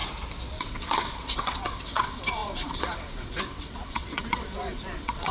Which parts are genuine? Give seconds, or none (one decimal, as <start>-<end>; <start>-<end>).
0.0-0.6

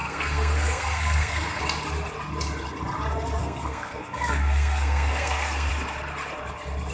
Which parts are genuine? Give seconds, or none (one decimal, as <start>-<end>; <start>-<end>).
1.6-3.4; 5.7-6.9

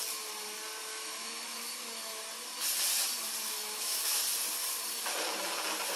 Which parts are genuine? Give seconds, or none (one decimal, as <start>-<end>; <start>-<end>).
0.0-0.9; 2.2-3.4; 4.2-6.0

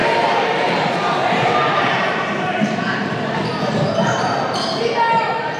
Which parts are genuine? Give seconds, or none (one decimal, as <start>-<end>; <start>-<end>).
3.4-5.6

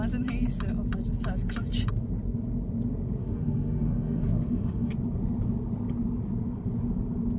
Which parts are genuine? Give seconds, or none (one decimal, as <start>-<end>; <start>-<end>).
0.0-3.2; 4.9-7.4

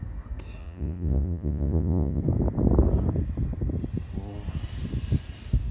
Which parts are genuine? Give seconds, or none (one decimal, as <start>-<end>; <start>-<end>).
0.0-0.6; 2.2-5.7